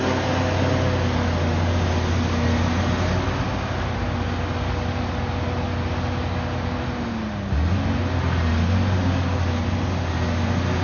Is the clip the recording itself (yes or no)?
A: yes